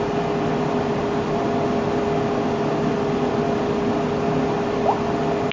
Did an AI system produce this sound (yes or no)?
no